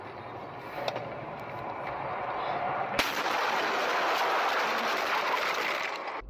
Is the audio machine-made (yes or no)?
no